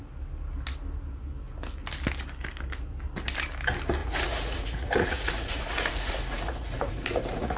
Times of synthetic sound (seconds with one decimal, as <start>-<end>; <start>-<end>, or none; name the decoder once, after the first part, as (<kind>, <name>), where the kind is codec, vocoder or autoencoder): 4.0-7.6 (vocoder, Vocos)